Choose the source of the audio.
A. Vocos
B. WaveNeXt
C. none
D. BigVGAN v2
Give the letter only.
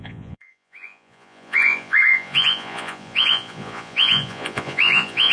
A